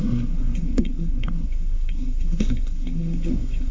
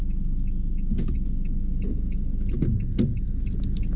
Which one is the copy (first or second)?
first